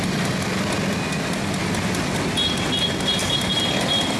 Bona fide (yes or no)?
yes